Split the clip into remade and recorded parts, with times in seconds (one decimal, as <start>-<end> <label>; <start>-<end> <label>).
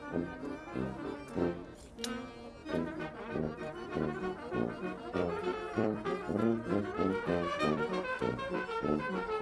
0.0-2.6 recorded; 2.6-6.8 remade; 6.8-7.3 recorded; 7.3-9.0 remade; 9.0-9.4 recorded